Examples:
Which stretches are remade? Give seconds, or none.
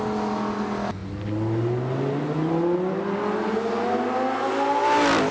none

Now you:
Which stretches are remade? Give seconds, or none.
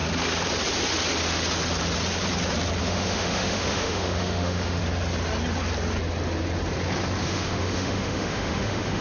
2.8-4.8 (autoencoder, DAC-VAE); 7.2-9.0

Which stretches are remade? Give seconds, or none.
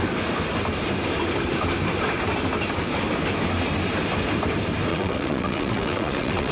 4.9-6.5 (vocoder, WaveNeXt)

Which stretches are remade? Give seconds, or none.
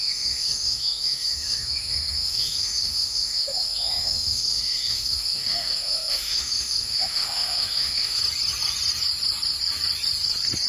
0.0-8.2 (autoencoder, DAC-VAE)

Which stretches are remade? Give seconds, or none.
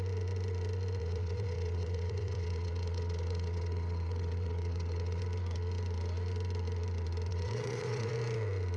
1.0-5.2 (vocoder, WaveNeXt); 7.3-8.1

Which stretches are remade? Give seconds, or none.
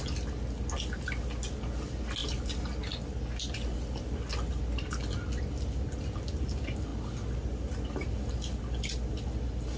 none